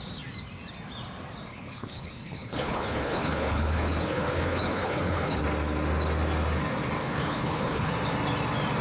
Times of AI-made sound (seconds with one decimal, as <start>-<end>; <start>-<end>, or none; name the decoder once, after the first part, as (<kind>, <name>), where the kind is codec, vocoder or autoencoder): 1.5-5.4 (codec, HILCodec); 7.0-7.9